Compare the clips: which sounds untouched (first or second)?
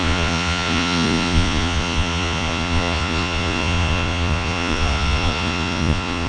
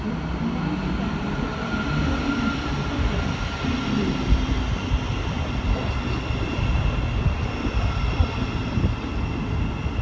second